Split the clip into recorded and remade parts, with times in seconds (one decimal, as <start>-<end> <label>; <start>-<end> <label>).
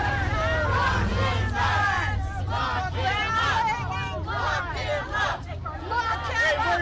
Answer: 0.0-6.8 recorded